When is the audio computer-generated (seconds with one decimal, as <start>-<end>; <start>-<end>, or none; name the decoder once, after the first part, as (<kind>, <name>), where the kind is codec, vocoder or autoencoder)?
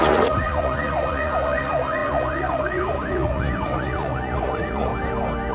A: 0.0-4.9 (vocoder, Vocos)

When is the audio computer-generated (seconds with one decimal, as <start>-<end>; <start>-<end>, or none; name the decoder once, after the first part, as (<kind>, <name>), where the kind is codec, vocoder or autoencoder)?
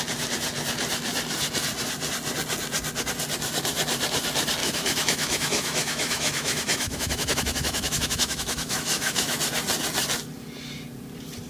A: 4.6-9.4 (autoencoder, DAC-VAE)